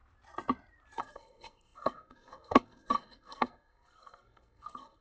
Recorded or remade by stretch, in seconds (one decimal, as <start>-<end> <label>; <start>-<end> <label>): 0.0-1.0 recorded; 1.0-5.0 remade